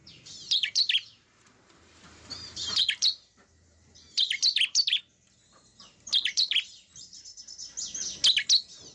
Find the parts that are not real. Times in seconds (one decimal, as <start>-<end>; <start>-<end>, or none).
0.0-5.0; 5.7-7.4